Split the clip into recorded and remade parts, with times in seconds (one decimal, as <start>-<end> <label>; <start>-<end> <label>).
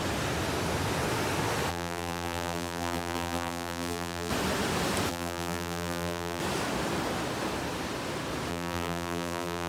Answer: 0.0-1.7 recorded; 1.7-4.3 remade; 4.3-5.1 recorded; 5.1-6.4 remade; 6.4-8.5 recorded; 8.5-9.7 remade